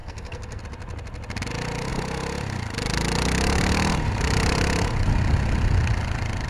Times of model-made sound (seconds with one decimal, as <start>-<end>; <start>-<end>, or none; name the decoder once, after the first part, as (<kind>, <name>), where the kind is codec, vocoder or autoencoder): 0.0-0.6 (codec, SNAC)

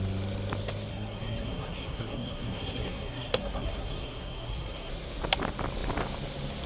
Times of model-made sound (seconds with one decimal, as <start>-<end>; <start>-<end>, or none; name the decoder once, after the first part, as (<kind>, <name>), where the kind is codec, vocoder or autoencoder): 0.9-4.9 (codec, SNAC)

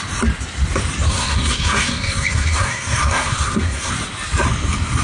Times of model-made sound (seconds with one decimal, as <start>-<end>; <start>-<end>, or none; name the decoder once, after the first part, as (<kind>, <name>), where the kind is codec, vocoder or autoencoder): 1.1-3.9 (codec, SNAC)

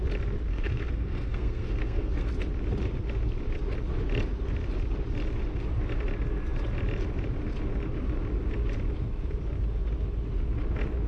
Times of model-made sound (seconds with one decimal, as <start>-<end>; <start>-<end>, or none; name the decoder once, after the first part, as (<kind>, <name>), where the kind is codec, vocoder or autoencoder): 0.5-2.3 (codec, SNAC)

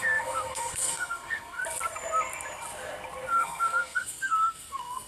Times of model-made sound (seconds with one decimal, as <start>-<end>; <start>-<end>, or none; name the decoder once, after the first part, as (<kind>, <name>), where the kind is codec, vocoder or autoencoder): 0.0-1.6 (codec, SNAC); 3.3-5.1

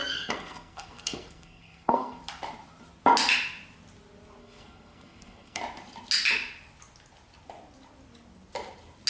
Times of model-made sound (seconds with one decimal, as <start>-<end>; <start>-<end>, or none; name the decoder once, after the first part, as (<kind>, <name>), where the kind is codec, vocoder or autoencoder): 0.0-2.2 (codec, SNAC); 4.4-5.6